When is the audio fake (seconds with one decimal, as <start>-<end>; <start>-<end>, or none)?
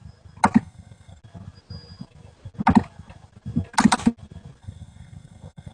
0.6-1.2; 4.6-5.7